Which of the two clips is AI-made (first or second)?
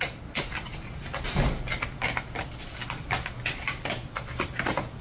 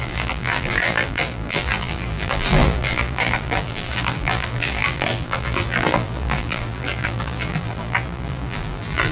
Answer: second